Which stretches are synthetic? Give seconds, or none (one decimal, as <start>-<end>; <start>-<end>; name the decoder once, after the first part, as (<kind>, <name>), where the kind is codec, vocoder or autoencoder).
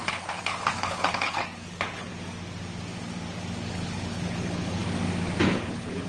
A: 0.0-2.1 (codec, HILCodec); 3.7-4.8; 5.4-6.1